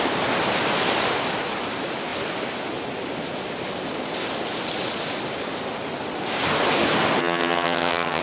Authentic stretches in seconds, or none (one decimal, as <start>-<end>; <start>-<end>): 0.0-7.2